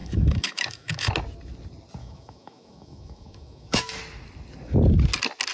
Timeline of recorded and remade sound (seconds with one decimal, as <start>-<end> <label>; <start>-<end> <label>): 0.0-1.1 remade; 1.1-2.0 recorded; 2.0-4.0 remade; 4.0-5.5 recorded